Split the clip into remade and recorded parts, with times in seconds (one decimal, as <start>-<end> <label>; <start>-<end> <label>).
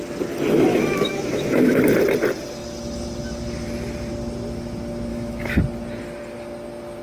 0.0-0.7 recorded; 0.7-1.8 remade; 1.8-5.1 recorded; 5.1-5.6 remade; 5.6-7.0 recorded